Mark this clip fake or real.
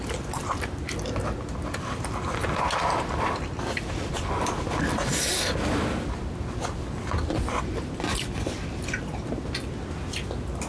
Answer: real